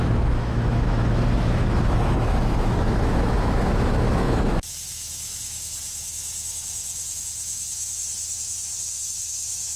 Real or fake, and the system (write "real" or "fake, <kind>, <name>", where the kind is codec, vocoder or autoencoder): fake, autoencoder, DAC-VAE